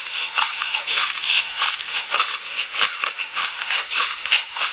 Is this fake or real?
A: fake